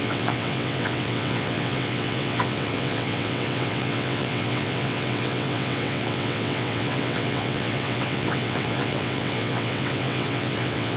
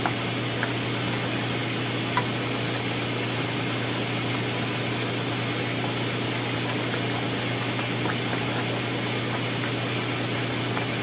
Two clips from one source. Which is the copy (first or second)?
first